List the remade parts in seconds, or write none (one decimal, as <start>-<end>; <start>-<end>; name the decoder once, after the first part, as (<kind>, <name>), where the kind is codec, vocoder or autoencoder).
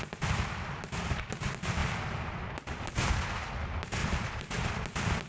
4.0-4.7 (vocoder, BigVGAN v2)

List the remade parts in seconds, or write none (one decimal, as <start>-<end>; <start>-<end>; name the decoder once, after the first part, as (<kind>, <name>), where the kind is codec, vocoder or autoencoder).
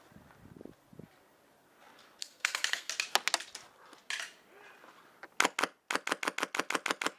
2.2-2.9 (codec, SNAC)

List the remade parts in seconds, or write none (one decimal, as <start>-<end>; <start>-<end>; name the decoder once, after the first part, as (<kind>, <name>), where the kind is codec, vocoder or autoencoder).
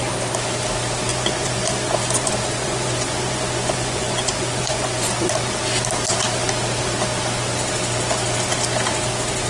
1.1-5.2 (vocoder, Vocos)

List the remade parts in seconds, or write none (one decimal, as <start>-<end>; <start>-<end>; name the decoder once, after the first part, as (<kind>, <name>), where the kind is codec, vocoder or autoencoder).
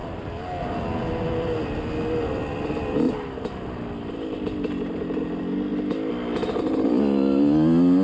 none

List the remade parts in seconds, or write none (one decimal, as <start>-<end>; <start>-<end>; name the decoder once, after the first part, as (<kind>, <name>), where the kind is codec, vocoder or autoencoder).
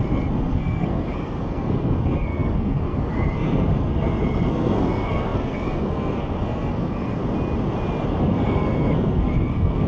0.0-7.2 (codec, SNAC); 8.2-9.9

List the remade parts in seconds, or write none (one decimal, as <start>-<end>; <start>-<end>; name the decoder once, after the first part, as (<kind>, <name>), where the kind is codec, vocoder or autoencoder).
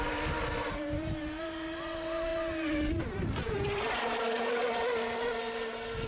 none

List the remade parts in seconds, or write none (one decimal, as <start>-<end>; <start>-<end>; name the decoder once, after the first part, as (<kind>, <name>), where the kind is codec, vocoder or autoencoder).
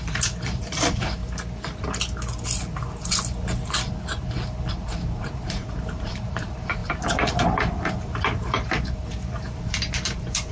0.0-1.2 (vocoder, BigVGAN v2); 4.7-10.5